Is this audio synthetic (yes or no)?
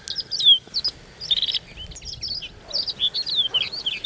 no